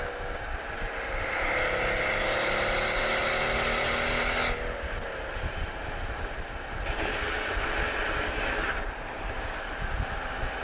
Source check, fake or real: real